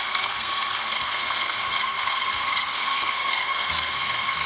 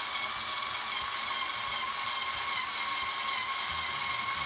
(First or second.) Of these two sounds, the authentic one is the second